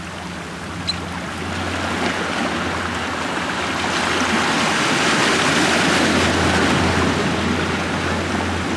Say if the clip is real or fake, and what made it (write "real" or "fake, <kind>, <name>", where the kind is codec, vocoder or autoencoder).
real